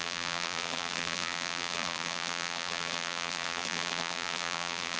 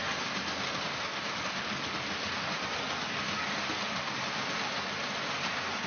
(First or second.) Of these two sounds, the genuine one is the second